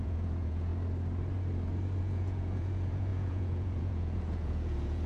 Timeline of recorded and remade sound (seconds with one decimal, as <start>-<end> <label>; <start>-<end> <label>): 0.0-0.7 remade; 0.7-2.0 recorded; 2.0-5.1 remade